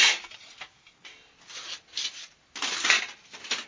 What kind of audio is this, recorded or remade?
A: recorded